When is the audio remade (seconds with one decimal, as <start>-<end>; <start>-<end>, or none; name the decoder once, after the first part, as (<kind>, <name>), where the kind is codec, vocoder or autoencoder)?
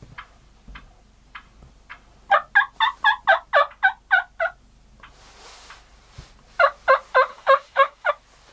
7.3-8.1 (autoencoder, DAC-VAE)